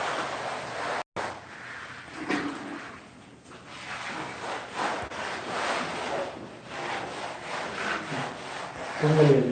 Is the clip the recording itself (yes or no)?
yes